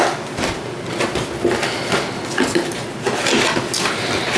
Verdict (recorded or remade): recorded